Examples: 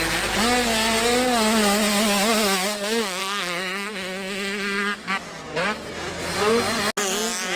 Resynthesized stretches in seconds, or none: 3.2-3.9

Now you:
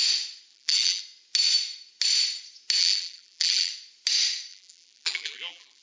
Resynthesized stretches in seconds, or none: 0.5-1.0; 2.8-3.7; 4.5-5.8

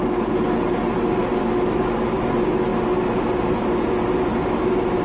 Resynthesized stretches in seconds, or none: none

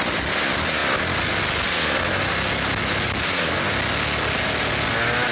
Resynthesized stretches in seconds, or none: none